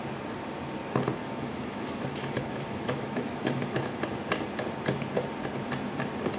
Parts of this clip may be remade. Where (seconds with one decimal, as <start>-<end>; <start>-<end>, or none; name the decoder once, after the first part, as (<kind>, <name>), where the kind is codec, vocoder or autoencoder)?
1.2-4.0 (autoencoder, DAC-VAE)